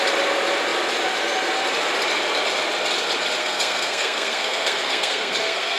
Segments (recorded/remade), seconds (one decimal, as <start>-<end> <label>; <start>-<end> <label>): 0.0-3.4 recorded; 3.4-5.8 remade